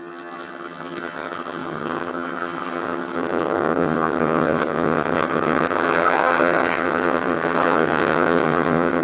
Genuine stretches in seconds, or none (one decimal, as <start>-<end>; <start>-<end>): none